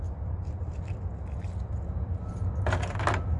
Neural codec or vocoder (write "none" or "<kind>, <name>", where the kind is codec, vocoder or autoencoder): none